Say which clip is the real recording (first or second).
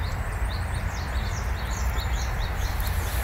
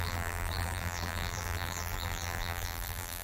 first